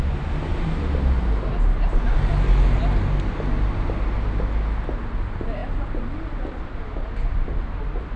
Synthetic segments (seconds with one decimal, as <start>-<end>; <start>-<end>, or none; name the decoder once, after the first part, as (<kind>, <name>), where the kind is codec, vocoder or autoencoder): none